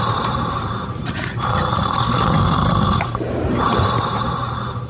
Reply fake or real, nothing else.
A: fake